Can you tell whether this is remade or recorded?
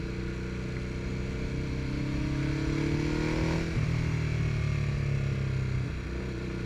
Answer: recorded